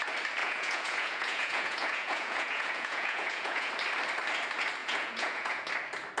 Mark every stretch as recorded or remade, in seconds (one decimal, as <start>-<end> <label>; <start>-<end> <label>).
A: 0.0-0.4 recorded; 0.4-3.7 remade; 3.7-4.8 recorded; 4.8-5.7 remade; 5.7-6.2 recorded